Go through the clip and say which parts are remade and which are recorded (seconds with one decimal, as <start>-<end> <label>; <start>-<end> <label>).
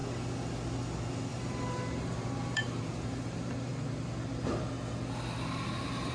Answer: 0.0-1.3 recorded; 1.3-3.7 remade; 3.7-6.1 recorded